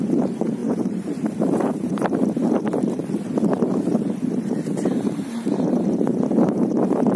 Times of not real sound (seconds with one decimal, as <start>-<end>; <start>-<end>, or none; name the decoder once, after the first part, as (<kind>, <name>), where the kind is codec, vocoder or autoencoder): 0.0-6.1 (vocoder, BigVGAN v2); 6.6-7.2